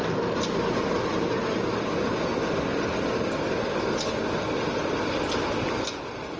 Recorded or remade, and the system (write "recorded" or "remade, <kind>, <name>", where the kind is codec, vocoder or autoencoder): recorded